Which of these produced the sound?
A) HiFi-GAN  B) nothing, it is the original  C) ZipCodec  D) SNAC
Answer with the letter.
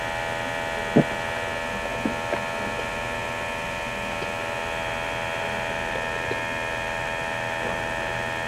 B